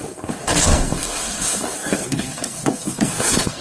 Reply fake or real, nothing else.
fake